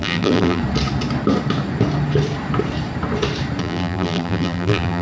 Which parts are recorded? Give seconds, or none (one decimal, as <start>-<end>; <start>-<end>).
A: 0.6-3.6